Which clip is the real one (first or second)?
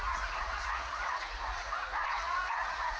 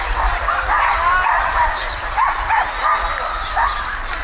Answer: second